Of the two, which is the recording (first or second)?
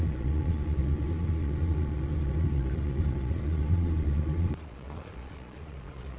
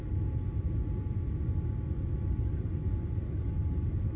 second